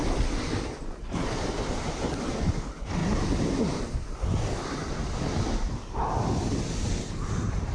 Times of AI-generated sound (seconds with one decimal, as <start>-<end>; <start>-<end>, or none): none